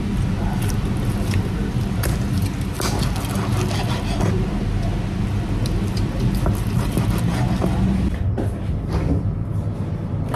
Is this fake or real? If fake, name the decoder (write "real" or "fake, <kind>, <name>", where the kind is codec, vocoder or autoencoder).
real